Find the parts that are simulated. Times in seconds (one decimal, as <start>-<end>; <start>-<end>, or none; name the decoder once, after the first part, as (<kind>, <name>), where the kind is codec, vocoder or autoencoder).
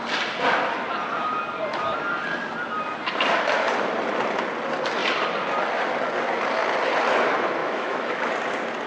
7.6-8.3 (autoencoder, DAC-VAE)